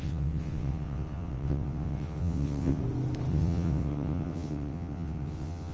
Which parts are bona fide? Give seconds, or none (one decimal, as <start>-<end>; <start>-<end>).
2.8-3.3